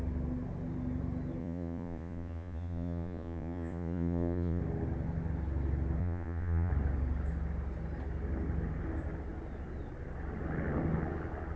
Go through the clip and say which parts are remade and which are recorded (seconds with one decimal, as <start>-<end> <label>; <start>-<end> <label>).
0.0-1.4 recorded; 1.4-4.6 remade; 4.6-6.0 recorded; 6.0-6.7 remade; 6.7-11.6 recorded